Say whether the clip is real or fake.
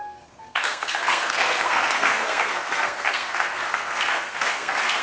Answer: fake